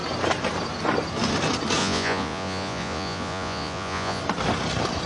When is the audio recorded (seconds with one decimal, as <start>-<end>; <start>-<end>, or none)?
0.0-1.8; 4.2-5.1